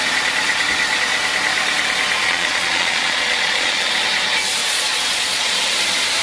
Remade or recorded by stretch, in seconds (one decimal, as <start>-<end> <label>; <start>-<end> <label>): 0.0-2.2 recorded; 2.2-3.9 remade; 3.9-4.6 recorded; 4.6-5.6 remade; 5.6-6.2 recorded